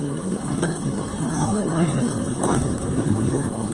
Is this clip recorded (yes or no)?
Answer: no